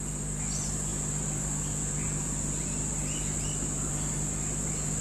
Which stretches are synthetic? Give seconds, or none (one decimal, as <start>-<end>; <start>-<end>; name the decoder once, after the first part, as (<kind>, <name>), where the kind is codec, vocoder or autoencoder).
none